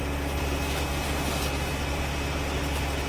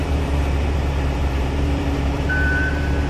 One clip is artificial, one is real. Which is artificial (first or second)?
second